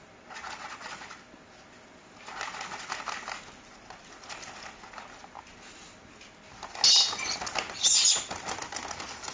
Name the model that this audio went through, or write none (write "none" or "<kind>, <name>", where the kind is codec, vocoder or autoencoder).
none